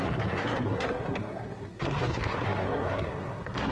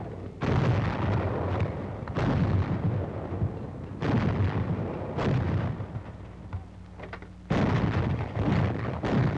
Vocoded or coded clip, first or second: first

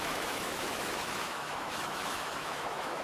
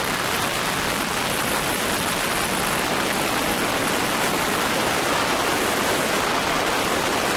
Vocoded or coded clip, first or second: first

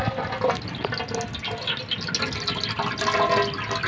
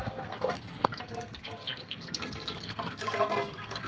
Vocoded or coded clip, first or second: second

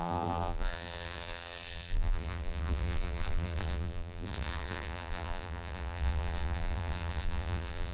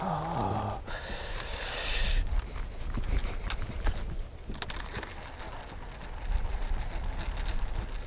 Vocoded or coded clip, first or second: first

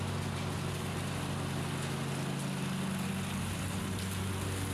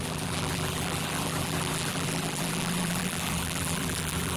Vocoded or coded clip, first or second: second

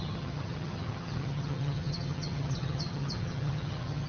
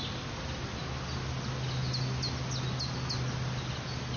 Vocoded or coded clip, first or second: first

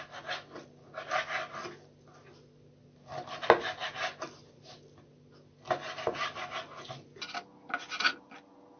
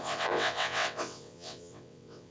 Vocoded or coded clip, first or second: second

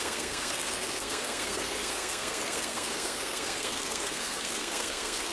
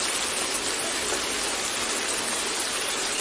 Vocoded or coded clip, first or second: first